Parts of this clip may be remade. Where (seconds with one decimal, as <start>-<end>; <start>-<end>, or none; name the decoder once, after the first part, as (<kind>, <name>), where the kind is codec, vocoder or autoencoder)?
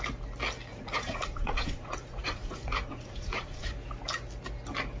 0.7-3.7 (vocoder, Vocos)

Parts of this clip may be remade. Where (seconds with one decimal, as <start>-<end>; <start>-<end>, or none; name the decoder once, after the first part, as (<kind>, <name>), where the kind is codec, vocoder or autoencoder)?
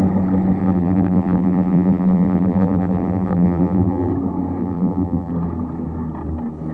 0.6-4.1 (vocoder, BigVGAN v2); 4.6-5.3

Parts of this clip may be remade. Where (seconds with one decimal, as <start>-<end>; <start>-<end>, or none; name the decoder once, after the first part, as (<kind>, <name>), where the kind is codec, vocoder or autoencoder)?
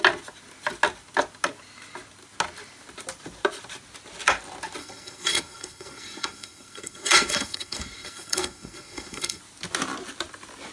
4.8-9.4 (codec, SNAC)